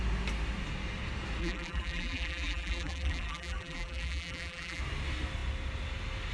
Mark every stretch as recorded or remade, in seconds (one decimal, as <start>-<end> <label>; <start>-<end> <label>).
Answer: 0.0-1.4 recorded; 1.4-4.8 remade; 4.8-6.3 recorded